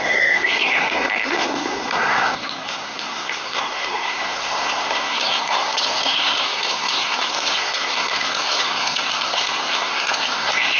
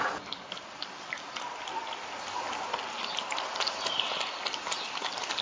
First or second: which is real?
second